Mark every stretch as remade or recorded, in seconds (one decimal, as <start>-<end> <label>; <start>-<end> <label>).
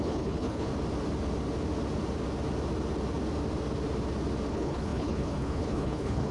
0.0-0.7 remade; 0.7-4.5 recorded; 4.5-6.3 remade